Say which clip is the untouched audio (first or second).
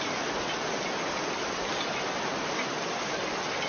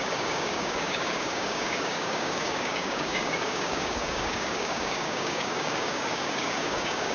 first